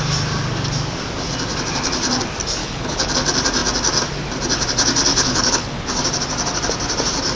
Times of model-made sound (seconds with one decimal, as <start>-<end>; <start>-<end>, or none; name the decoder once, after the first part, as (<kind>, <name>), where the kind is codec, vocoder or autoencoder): 2.6-3.1 (codec, HILCodec); 5.1-5.9